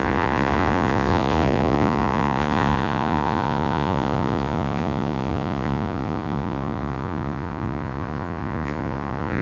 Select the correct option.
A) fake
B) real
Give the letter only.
A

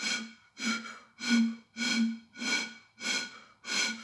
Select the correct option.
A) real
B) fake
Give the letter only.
A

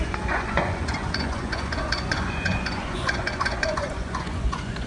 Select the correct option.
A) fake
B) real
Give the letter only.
A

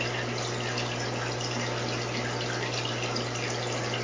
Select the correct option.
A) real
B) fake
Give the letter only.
A